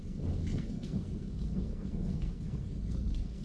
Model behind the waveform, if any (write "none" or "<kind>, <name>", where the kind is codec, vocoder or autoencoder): codec, SNAC